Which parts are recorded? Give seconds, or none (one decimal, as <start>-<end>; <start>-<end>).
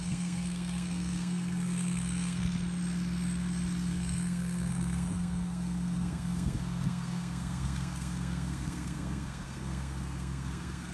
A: 2.4-3.9